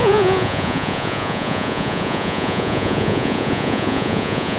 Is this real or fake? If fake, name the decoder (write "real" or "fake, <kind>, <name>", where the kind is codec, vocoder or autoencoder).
fake, vocoder, Vocos